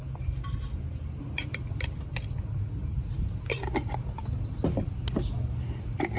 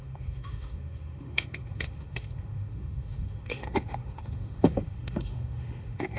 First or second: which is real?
first